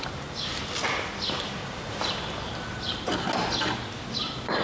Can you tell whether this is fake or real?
real